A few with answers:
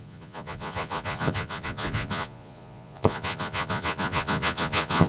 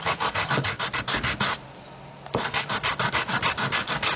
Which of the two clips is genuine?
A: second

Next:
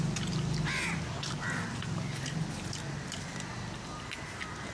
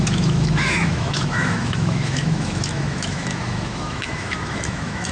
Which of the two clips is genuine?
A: first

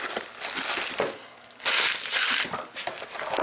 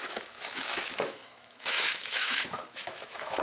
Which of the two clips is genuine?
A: first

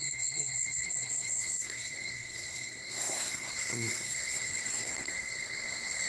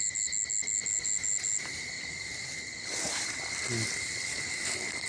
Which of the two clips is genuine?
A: second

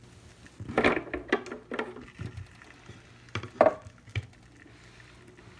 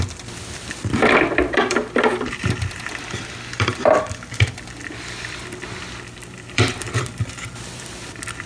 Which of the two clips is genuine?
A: first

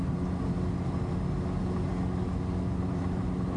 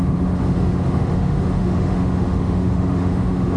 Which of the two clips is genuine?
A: first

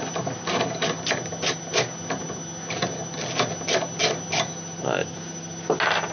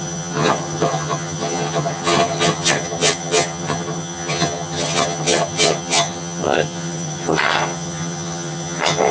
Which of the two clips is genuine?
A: first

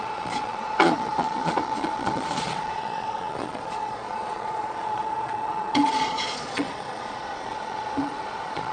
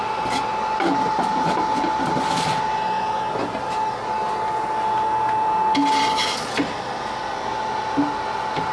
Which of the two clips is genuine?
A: second